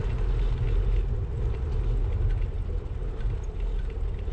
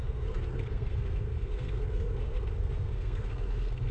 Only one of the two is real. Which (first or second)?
first